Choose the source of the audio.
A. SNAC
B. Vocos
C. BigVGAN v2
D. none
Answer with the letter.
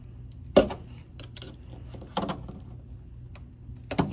D